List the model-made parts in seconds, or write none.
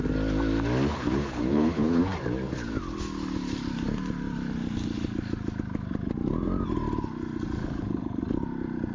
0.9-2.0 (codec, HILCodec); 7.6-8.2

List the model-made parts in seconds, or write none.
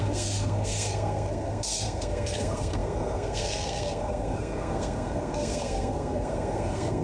0.0-7.0 (codec, SNAC)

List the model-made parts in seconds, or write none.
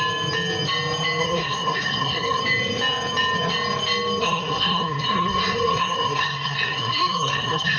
1.2-2.4 (codec, SNAC); 4.2-7.8